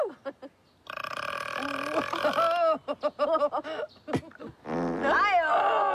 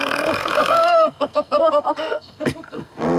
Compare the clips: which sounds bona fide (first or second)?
first